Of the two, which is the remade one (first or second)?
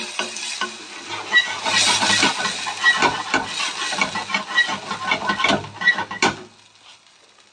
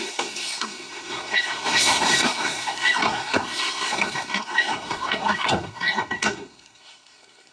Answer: second